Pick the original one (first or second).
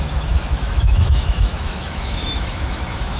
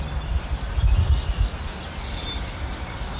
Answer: second